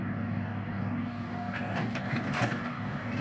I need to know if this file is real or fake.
fake